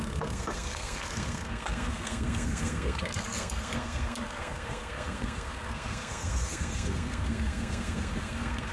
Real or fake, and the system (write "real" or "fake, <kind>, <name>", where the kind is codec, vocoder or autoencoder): fake, codec, SNAC